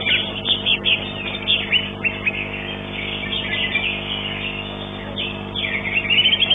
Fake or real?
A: real